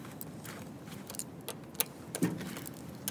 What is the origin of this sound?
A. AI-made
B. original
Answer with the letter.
B